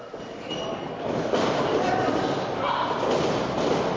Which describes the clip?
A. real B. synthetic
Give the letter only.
A